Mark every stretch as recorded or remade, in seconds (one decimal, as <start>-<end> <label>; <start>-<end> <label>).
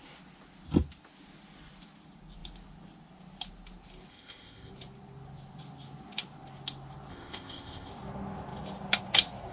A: 0.0-4.1 recorded; 4.1-4.7 remade; 4.7-7.1 recorded; 7.1-7.9 remade; 7.9-9.5 recorded